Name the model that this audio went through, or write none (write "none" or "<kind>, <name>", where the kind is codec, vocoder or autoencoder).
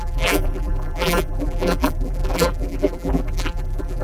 vocoder, BigVGAN v2